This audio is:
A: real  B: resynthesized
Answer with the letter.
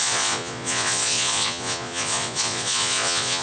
B